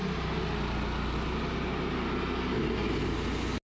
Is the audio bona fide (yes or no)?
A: yes